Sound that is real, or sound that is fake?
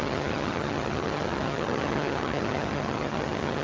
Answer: fake